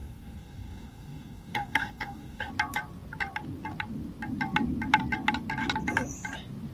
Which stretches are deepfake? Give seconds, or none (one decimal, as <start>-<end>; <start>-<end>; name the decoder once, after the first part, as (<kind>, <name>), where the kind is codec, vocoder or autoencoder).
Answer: 0.0-2.5 (codec, DAC)